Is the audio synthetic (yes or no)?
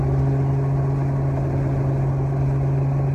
no